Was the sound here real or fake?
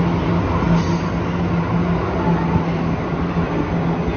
real